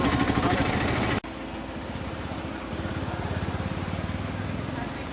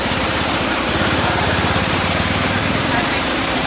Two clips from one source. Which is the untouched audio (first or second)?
first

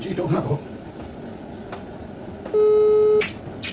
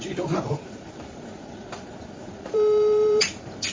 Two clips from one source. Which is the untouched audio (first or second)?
first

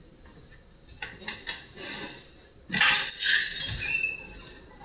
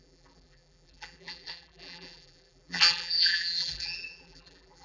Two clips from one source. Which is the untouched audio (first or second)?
first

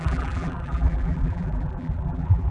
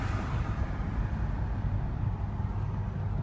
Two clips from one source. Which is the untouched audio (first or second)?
second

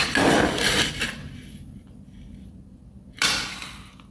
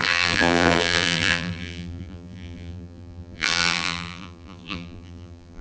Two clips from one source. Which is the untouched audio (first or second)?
first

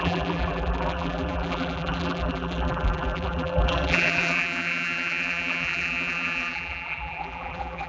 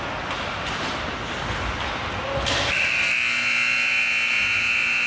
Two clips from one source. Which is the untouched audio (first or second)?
second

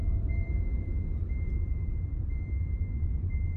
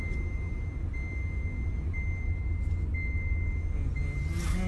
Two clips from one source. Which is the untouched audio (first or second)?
second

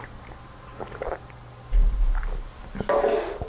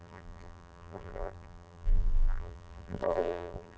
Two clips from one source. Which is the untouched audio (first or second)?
first